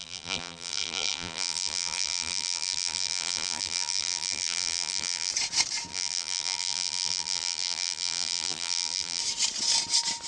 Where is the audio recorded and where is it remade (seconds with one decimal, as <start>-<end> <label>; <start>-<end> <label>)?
0.0-5.3 remade; 5.3-5.9 recorded; 5.9-9.2 remade; 9.2-10.3 recorded